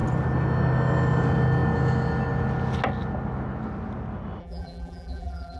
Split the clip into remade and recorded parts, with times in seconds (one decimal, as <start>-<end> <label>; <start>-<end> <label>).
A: 0.0-4.4 recorded; 4.4-5.6 remade